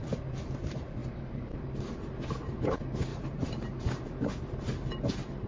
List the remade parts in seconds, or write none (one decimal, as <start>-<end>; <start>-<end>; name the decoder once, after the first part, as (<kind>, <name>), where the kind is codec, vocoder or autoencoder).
1.0-1.6 (vocoder, BigVGAN v2); 3.1-3.8